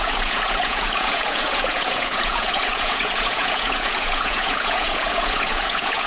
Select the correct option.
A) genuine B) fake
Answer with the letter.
B